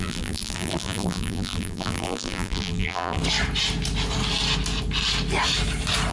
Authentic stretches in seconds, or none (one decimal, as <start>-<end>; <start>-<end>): 3.2-6.1